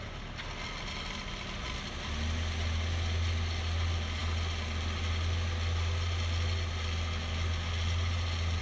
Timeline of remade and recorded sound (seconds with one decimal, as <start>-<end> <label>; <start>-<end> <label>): 0.0-8.6 recorded